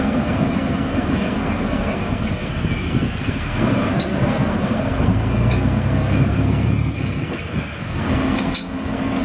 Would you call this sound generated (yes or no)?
yes